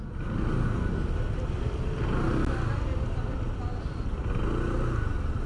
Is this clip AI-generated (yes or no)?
no